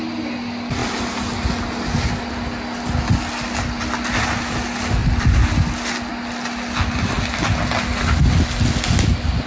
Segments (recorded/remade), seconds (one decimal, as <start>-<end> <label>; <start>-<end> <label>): 0.0-9.5 recorded